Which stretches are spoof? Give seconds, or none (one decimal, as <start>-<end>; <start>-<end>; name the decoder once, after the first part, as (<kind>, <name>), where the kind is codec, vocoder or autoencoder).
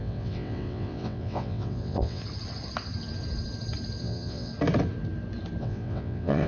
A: 0.0-2.2 (vocoder, WaveNeXt); 4.0-4.5; 5.6-6.5